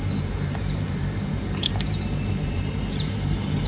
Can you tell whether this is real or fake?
fake